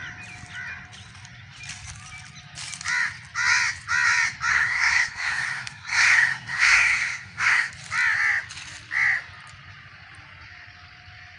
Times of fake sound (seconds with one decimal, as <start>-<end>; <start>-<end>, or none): 4.5-7.7